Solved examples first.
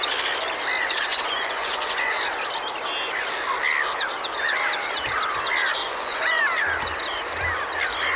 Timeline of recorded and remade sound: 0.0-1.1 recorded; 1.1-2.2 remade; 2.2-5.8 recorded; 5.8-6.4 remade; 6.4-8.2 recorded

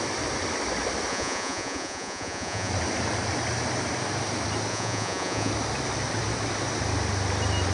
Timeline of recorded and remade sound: 0.0-1.1 recorded; 1.1-2.7 remade; 2.7-4.7 recorded; 4.7-5.5 remade; 5.5-7.7 recorded

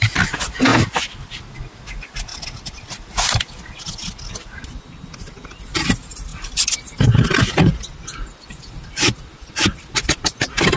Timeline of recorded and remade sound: 0.0-10.8 recorded